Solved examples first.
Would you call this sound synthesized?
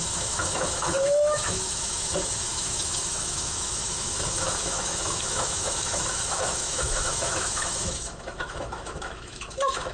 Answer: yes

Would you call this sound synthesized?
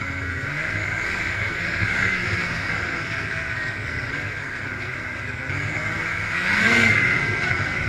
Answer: yes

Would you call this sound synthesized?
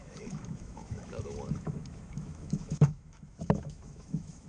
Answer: yes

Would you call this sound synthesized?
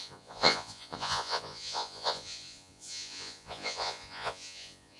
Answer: yes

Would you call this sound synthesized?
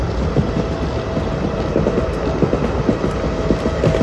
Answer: no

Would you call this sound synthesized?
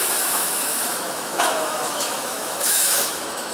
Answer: yes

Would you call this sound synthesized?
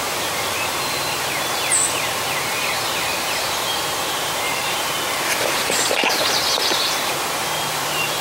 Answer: yes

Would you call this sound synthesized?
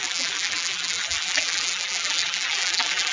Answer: yes